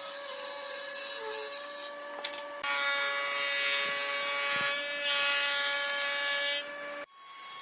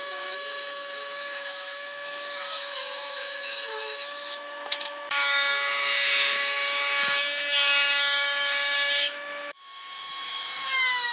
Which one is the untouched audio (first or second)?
first